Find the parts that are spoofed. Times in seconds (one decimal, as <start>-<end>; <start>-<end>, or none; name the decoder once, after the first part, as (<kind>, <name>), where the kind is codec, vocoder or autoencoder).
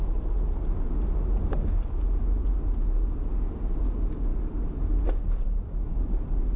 none